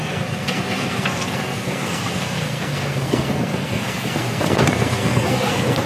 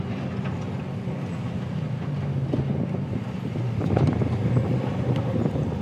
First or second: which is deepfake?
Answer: first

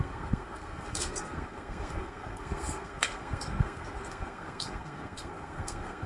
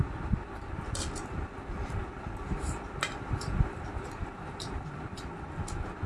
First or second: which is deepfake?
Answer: first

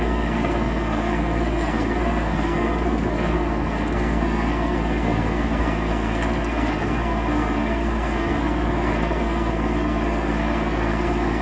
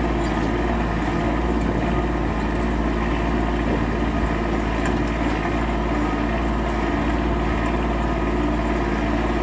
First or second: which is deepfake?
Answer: first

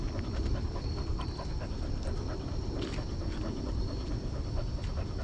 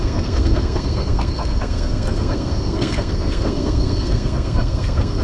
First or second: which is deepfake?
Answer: second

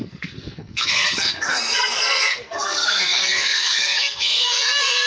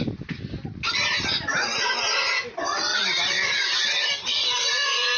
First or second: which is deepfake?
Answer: first